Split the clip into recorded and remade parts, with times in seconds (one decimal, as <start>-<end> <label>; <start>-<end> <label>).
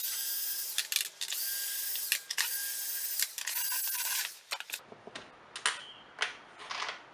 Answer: 0.0-7.1 recorded